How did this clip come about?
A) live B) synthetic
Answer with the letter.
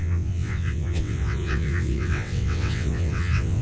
B